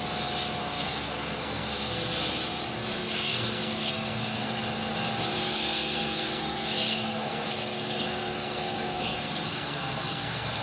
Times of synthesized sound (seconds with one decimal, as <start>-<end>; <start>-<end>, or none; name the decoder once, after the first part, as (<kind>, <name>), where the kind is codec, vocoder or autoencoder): 0.6-2.2 (codec, SNAC); 3.0-4.6; 5.3-10.6